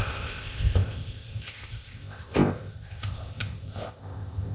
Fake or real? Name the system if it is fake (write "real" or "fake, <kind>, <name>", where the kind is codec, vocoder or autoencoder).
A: fake, codec, ZipCodec